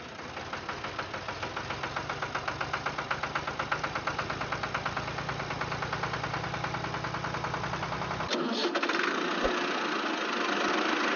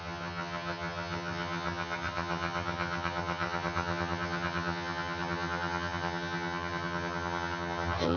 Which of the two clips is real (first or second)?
first